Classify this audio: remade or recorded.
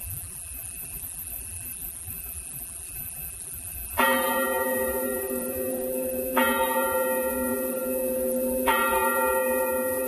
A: remade